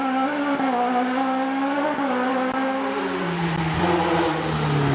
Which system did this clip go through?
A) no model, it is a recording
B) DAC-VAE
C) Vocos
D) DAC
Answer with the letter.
A